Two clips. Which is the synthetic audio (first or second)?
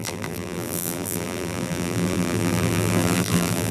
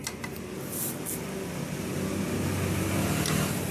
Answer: first